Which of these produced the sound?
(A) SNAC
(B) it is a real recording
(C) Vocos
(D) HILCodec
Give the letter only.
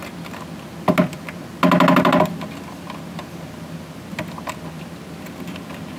B